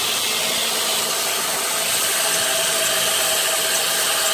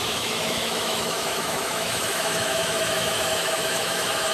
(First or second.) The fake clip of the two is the second